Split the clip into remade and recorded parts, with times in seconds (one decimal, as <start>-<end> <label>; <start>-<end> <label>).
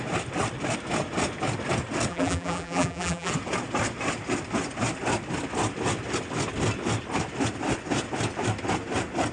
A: 0.0-2.1 recorded; 2.1-3.3 remade; 3.3-9.3 recorded